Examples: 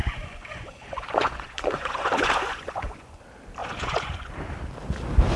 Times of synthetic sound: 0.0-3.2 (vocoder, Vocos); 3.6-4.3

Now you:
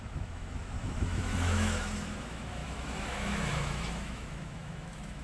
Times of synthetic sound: 0.0-5.2 (autoencoder, DAC-VAE)